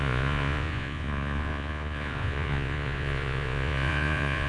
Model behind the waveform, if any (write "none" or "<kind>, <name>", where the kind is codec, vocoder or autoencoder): vocoder, Vocos